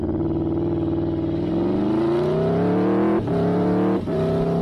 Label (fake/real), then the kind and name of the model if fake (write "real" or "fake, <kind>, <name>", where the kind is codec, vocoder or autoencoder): real